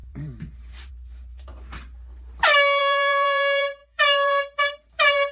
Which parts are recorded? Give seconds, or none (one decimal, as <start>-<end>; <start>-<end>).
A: 1.5-2.8